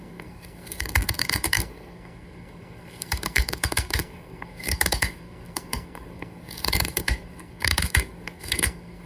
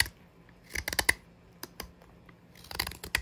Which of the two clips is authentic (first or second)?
second